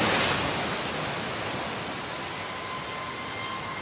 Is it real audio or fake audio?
real